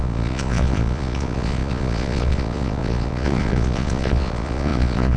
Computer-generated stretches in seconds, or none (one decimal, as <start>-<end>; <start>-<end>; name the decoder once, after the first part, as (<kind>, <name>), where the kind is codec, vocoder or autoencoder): 0.0-5.2 (vocoder, Vocos)